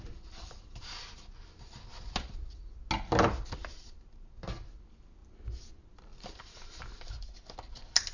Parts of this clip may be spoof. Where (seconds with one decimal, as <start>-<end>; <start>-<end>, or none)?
none